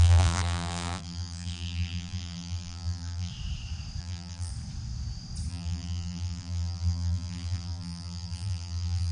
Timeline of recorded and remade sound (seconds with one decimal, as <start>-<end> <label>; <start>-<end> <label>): 0.0-3.3 remade; 3.3-4.0 recorded; 4.0-4.5 remade; 4.5-5.5 recorded; 5.5-9.1 remade